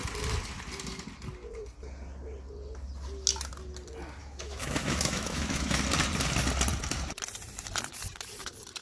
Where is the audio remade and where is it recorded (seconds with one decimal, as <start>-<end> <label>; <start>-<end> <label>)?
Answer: 0.0-4.2 recorded; 4.2-5.8 remade; 5.8-8.8 recorded